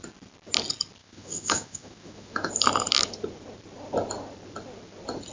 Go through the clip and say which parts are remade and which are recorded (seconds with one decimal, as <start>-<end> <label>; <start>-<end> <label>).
0.0-1.0 recorded; 1.0-2.5 remade; 2.5-5.3 recorded